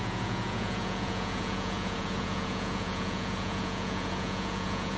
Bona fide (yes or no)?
no